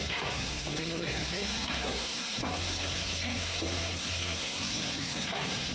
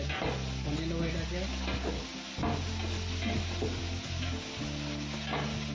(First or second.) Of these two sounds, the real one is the second